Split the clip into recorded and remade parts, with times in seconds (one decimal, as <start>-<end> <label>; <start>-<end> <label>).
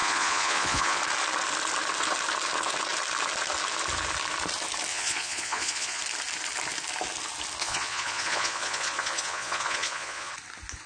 0.0-1.0 remade; 1.0-4.9 recorded; 4.9-6.0 remade; 6.0-7.6 recorded; 7.6-10.3 remade; 10.3-10.9 recorded